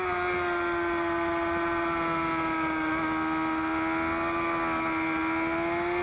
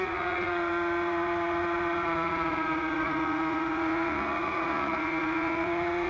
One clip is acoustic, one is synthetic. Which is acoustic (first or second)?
first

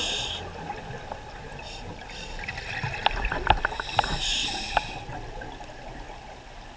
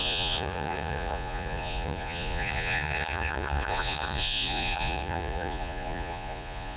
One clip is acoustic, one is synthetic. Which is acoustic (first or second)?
first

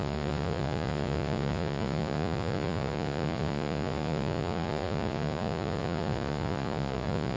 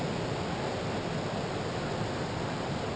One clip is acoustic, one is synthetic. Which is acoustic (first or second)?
second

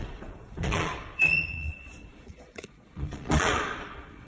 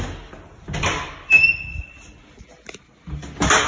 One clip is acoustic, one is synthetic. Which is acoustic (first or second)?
second